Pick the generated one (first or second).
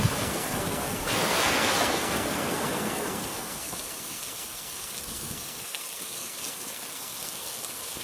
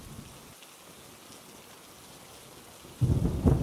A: first